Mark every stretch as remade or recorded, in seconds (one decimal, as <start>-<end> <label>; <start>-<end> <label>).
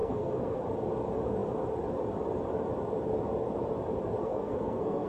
0.0-0.6 remade; 0.6-4.2 recorded; 4.2-5.1 remade